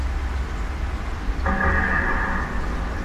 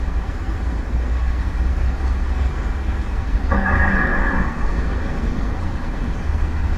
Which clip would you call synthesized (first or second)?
second